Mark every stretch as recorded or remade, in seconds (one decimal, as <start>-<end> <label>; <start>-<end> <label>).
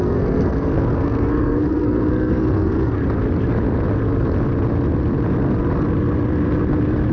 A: 0.0-3.0 remade; 3.0-7.1 recorded